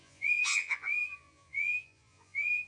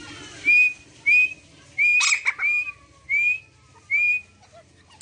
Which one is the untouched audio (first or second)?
second